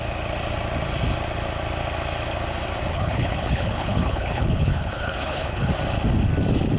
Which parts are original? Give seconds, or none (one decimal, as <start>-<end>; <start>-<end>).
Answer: 0.0-2.9; 5.7-6.8